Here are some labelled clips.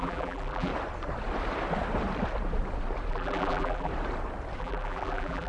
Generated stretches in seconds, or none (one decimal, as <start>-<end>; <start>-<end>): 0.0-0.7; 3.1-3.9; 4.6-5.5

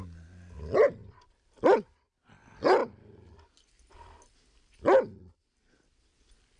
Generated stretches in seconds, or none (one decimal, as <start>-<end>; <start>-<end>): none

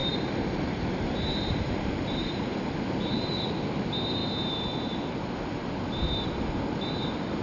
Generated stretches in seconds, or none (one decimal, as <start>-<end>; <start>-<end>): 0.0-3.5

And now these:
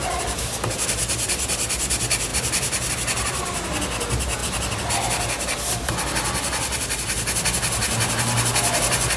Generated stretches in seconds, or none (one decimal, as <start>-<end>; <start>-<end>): none